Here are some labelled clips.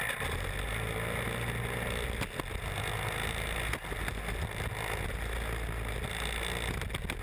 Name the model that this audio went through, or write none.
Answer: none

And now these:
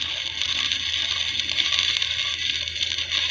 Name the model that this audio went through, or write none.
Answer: none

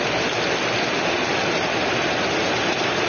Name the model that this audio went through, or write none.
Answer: none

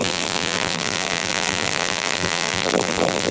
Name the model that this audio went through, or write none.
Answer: vocoder, BigVGAN v2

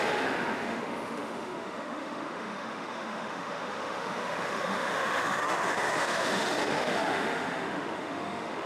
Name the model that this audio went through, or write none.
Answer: autoencoder, DAC-VAE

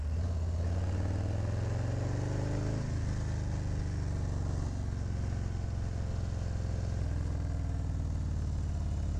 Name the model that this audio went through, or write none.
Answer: none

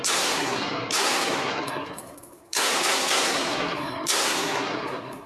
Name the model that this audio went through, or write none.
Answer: codec, SNAC